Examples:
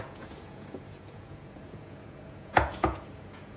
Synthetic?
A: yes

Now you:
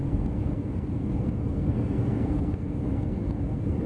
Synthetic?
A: yes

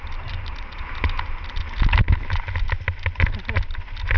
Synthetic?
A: no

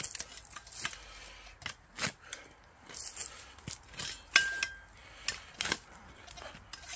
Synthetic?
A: no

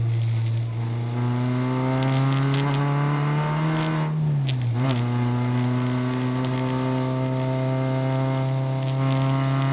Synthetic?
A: no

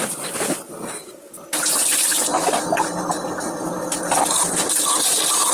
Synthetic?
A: no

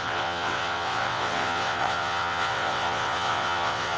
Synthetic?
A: yes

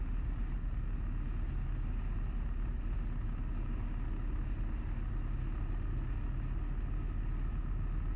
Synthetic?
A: no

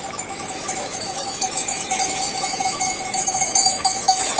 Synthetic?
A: yes